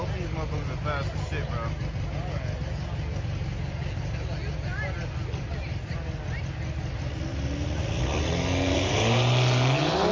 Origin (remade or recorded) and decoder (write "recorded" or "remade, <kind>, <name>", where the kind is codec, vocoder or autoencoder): recorded